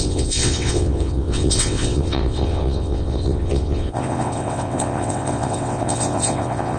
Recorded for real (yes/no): no